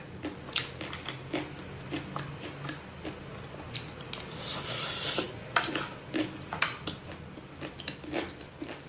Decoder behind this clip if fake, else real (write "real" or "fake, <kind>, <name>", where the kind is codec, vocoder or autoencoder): real